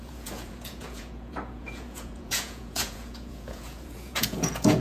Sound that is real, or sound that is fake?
fake